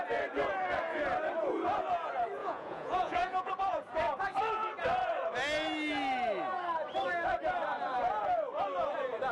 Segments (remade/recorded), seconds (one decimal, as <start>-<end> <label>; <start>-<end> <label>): 0.0-2.4 recorded; 2.4-3.5 remade; 3.5-9.3 recorded